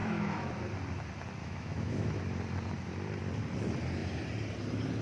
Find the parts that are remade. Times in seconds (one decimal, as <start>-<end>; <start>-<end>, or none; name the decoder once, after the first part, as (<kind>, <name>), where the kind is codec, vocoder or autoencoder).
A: 0.0-0.5 (autoencoder, DAC-VAE); 1.4-2.2